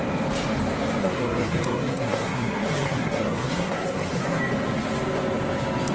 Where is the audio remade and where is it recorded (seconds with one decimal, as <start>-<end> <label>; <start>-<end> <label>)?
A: 0.0-1.0 recorded; 1.0-4.4 remade; 4.4-5.9 recorded